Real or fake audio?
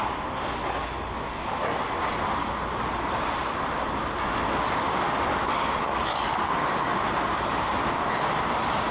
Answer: real